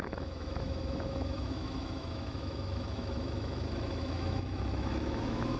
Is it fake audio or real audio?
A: fake